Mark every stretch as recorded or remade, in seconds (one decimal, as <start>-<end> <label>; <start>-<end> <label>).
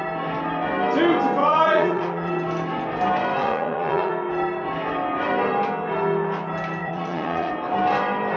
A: 0.0-1.4 recorded; 1.4-2.3 remade; 2.3-3.4 recorded; 3.4-4.1 remade; 4.1-6.8 recorded; 6.8-7.5 remade; 7.5-8.4 recorded